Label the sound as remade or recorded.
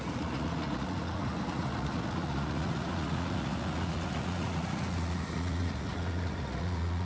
remade